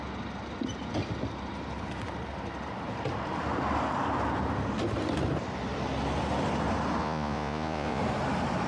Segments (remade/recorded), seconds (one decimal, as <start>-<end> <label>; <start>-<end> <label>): 0.0-7.0 recorded; 7.0-8.0 remade; 8.0-8.7 recorded